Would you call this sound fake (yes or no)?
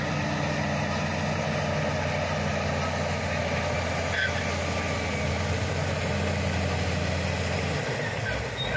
no